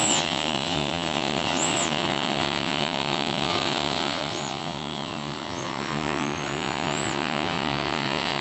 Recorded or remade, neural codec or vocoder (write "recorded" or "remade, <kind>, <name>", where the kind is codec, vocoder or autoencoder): remade, vocoder, WaveNeXt